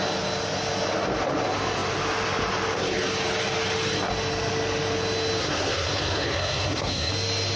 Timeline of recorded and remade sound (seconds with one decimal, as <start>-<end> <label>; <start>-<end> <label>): 0.0-5.4 recorded; 5.4-7.1 remade; 7.1-7.6 recorded